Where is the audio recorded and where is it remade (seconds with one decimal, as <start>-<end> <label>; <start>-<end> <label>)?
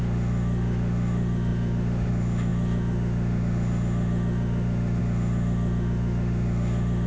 0.0-7.1 remade